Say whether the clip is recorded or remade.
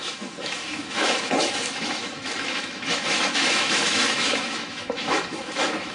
remade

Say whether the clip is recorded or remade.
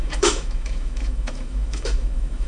remade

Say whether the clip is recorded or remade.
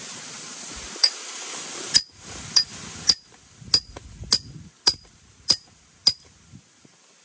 recorded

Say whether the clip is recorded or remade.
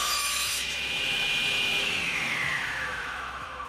remade